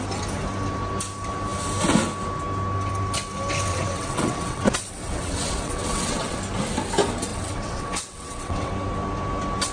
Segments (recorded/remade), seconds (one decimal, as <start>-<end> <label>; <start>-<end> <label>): 0.0-3.7 recorded; 3.7-6.4 remade; 6.4-7.3 recorded; 7.3-8.7 remade; 8.7-9.7 recorded